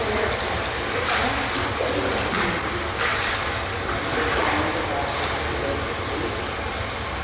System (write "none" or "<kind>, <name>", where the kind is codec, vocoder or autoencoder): none